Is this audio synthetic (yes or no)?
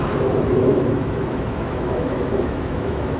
yes